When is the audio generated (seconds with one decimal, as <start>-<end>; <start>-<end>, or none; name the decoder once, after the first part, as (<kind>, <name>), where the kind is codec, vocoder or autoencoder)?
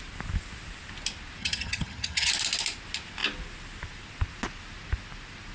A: 1.4-2.3 (vocoder, HiFi-GAN)